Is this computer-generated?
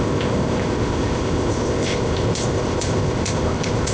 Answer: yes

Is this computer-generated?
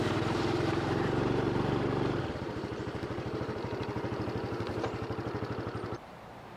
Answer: yes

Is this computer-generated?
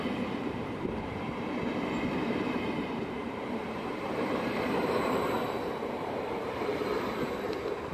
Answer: yes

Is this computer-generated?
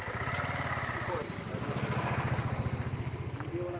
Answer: no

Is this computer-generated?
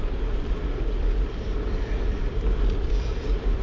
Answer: yes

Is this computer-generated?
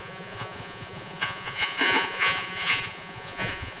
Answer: yes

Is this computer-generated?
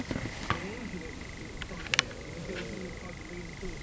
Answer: no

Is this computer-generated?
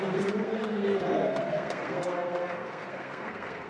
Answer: yes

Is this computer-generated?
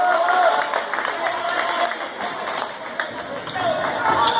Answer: no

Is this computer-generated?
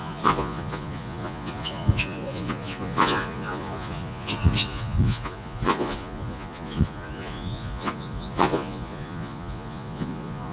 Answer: yes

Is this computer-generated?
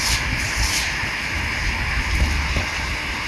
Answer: no